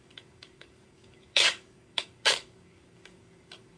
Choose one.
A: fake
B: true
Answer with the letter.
A